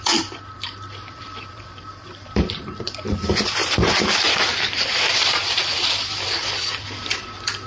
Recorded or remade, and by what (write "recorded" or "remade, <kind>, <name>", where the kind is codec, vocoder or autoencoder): remade, vocoder, BigVGAN v2